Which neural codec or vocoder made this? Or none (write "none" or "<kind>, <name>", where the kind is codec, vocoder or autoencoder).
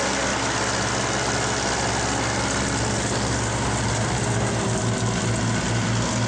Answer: none